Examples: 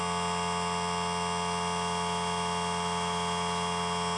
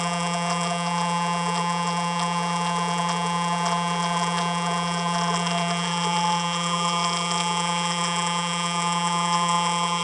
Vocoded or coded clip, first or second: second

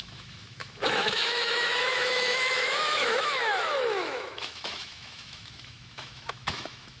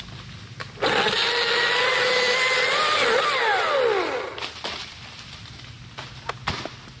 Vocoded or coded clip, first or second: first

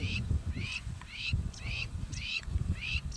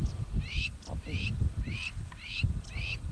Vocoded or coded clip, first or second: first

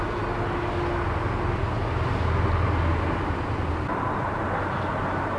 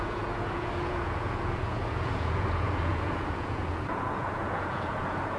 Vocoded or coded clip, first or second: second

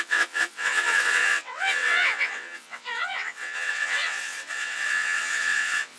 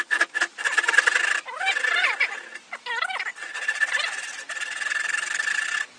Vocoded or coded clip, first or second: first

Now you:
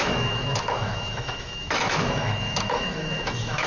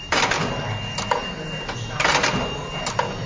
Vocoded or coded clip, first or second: first